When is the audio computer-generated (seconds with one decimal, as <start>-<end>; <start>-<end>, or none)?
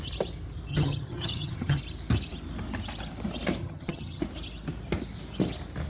0.7-1.8; 3.6-4.2